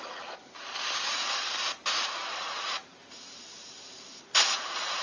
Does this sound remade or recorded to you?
remade